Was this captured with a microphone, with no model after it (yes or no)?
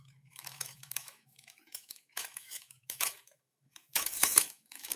no